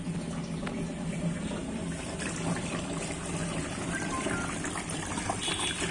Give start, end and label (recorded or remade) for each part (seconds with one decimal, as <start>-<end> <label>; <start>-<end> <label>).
0.0-5.9 recorded